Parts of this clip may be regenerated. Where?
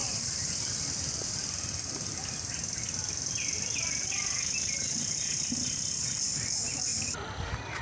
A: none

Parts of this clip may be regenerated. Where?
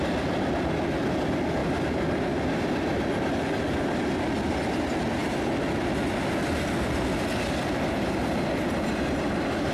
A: none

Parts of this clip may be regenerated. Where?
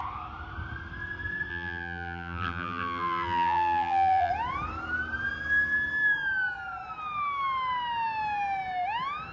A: 1.5-4.3 (vocoder, BigVGAN v2)